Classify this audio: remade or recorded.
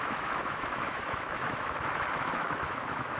remade